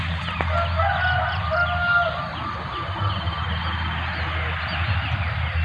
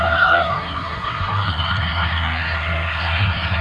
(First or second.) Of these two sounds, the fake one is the second